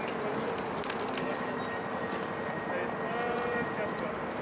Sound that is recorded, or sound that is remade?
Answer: recorded